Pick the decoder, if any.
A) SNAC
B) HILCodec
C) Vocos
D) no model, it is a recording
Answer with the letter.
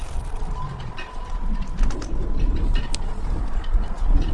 D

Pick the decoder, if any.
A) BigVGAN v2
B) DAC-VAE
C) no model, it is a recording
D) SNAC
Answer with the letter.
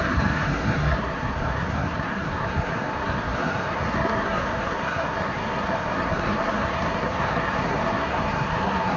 D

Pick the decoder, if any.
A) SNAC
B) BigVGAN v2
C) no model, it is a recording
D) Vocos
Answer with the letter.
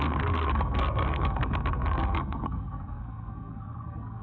A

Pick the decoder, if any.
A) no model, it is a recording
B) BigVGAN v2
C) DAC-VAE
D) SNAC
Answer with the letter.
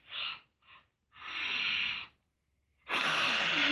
A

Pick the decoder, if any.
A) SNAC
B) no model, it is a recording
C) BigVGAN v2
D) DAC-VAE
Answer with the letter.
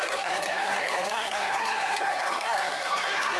A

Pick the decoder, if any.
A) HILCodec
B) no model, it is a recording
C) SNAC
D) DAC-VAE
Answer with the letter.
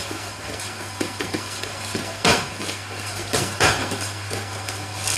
C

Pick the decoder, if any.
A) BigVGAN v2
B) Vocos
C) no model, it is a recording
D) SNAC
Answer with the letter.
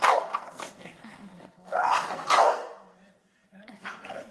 D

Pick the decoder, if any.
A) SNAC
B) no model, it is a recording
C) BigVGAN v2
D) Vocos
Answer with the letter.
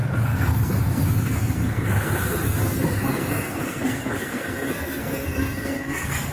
A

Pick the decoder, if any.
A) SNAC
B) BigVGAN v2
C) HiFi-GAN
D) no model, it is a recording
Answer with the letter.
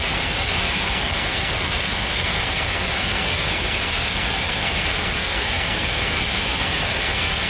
A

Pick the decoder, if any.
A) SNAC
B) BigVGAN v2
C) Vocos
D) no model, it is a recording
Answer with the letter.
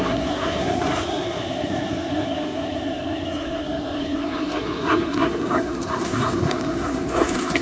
A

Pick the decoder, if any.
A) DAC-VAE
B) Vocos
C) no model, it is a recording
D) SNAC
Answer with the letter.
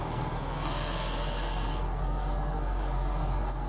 D